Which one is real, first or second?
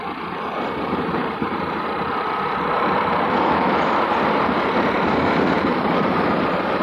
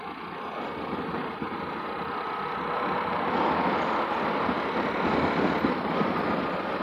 second